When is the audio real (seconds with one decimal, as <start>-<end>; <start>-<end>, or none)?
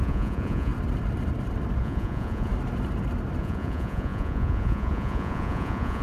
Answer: 0.7-1.8; 2.5-3.4